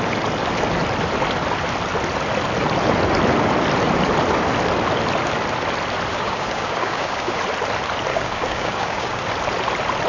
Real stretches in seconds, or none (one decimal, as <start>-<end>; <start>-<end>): 0.0-6.1; 7.4-8.1; 9.2-10.1